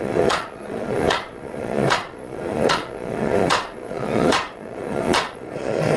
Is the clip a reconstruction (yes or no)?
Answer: yes